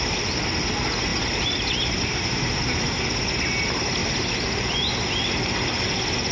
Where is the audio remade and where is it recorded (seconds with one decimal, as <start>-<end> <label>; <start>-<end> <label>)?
0.0-6.3 recorded